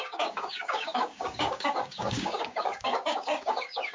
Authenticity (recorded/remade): remade